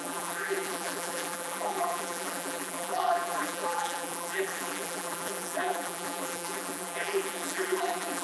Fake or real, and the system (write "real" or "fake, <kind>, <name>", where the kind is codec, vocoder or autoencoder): fake, vocoder, BigVGAN v2